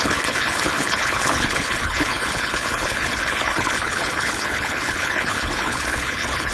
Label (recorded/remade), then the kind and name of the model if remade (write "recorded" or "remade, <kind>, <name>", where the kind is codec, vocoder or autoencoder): remade, codec, HILCodec